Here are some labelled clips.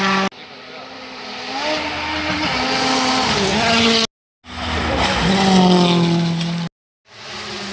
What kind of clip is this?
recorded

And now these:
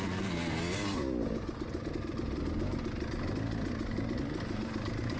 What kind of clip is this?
recorded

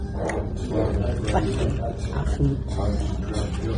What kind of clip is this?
recorded